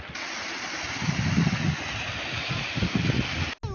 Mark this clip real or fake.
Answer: real